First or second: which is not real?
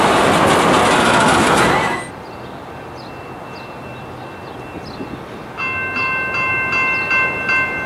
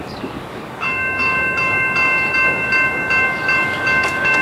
second